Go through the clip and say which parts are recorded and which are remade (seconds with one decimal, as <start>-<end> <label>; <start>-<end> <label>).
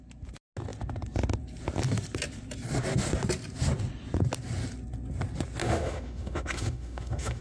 0.0-5.6 recorded; 5.6-7.4 remade